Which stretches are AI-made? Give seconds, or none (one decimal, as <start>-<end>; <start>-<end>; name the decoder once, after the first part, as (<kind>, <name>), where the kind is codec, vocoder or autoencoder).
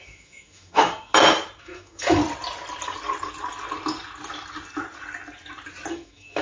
0.0-1.1 (autoencoder, DAC-VAE); 1.6-2.2; 5.9-6.4